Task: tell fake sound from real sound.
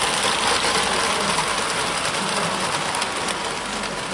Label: real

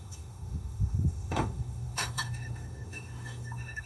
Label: fake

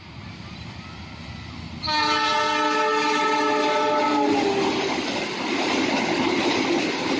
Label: real